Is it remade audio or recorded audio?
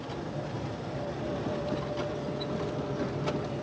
recorded